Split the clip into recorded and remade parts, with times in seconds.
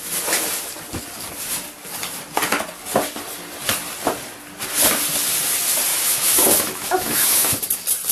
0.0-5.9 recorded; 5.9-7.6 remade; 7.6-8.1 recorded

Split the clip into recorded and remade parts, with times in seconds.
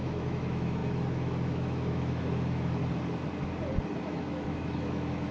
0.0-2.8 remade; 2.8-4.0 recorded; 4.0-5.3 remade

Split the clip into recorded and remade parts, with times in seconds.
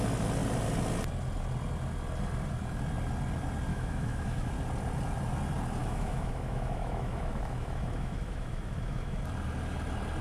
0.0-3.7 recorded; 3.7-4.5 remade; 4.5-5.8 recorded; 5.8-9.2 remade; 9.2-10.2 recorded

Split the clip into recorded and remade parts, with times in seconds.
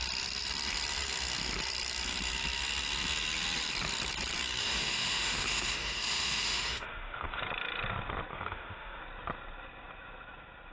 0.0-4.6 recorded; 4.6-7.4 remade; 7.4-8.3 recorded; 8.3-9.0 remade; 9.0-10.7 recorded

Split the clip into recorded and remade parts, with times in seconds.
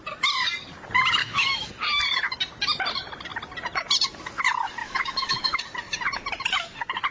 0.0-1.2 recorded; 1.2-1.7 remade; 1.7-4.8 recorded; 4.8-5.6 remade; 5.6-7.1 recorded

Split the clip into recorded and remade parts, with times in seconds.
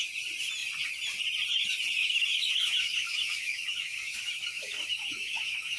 0.0-2.0 recorded; 2.0-5.8 remade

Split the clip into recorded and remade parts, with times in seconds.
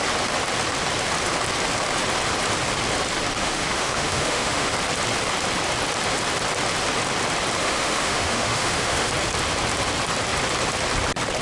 0.0-3.4 recorded; 3.4-4.7 remade; 4.7-7.6 recorded; 7.6-9.1 remade; 9.1-11.4 recorded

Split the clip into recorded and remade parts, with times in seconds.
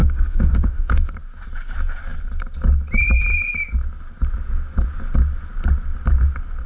0.0-1.1 remade; 1.1-6.7 recorded